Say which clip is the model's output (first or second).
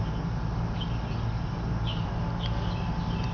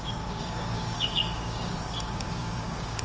second